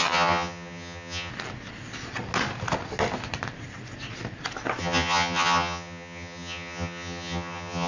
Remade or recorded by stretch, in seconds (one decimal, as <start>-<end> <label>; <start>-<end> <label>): 0.0-1.3 remade; 1.3-4.8 recorded; 4.8-7.9 remade

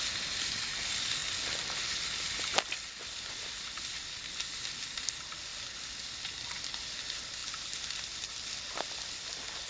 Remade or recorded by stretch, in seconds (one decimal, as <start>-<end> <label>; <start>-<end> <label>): 0.0-9.7 recorded

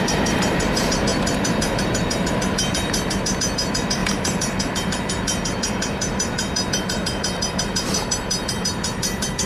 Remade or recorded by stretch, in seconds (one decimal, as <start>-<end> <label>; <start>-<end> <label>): 0.0-9.5 remade

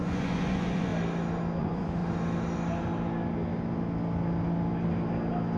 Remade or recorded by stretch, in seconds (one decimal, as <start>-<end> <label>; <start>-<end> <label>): 0.0-0.9 remade; 0.9-1.6 recorded; 1.6-2.0 remade; 2.0-5.6 recorded

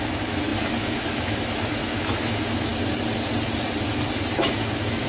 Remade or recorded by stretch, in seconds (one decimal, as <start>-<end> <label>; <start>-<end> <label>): 0.0-2.7 remade; 2.7-4.3 recorded; 4.3-5.1 remade

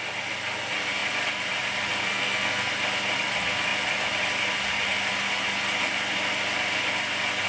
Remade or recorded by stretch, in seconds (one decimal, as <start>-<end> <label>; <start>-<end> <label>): 0.0-2.0 recorded; 2.0-2.7 remade; 2.7-7.5 recorded